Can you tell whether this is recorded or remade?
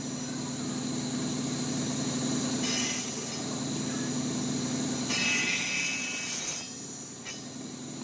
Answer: recorded